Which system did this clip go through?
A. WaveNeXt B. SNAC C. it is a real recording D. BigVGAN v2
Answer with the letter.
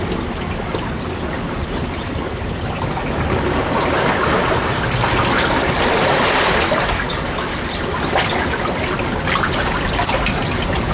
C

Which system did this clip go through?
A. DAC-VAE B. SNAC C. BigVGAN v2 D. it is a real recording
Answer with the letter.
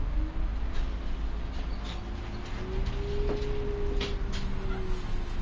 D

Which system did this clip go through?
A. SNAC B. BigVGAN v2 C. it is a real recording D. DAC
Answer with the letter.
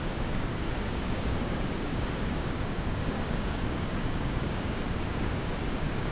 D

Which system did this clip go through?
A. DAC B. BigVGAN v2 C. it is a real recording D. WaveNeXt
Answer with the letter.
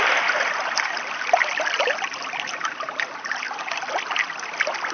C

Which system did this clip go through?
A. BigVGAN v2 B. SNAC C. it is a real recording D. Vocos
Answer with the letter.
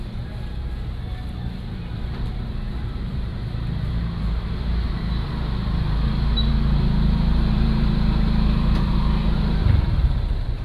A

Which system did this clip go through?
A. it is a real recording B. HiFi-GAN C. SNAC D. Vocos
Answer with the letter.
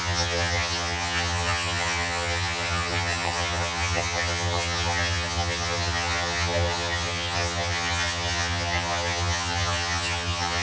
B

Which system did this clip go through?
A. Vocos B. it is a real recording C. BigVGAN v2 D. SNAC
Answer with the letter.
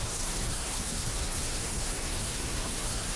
D